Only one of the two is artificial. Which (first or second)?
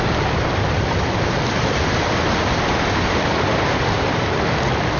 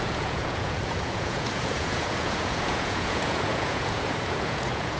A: second